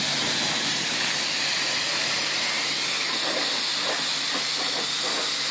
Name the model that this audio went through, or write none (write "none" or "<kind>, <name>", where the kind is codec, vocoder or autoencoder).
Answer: none